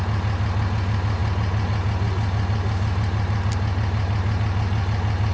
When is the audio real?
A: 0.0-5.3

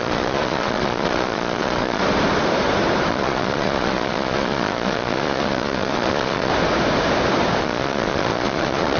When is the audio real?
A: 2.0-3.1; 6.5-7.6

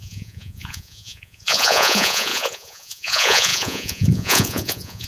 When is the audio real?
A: none

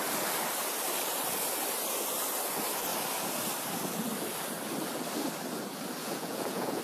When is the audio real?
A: 0.0-6.0

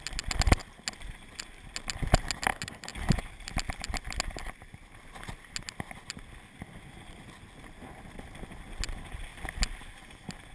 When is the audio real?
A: 0.0-10.5

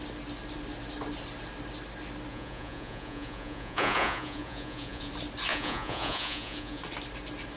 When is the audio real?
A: 0.0-2.3; 5.1-5.5; 6.8-7.6